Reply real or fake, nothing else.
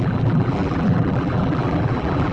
fake